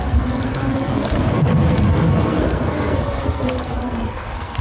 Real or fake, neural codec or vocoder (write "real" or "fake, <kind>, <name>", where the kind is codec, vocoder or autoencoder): fake, codec, SNAC